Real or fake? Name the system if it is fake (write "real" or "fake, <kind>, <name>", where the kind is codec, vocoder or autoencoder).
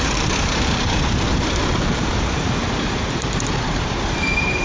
fake, vocoder, BigVGAN v2